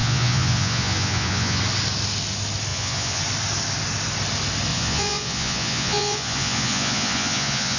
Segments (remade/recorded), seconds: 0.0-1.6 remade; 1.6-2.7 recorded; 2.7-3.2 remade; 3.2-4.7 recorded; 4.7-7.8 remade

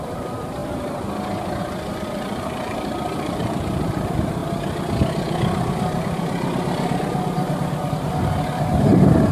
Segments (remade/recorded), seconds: 0.0-0.6 remade; 0.6-1.6 recorded; 1.6-4.4 remade; 4.4-7.9 recorded; 7.9-9.3 remade

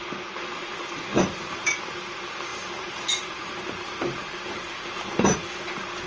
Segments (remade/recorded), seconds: 0.0-1.1 recorded; 1.1-1.7 remade; 1.7-2.5 recorded; 2.5-6.1 remade